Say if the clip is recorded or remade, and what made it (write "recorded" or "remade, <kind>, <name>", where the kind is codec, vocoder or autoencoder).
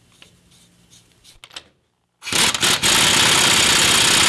recorded